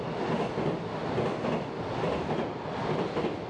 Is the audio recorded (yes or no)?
yes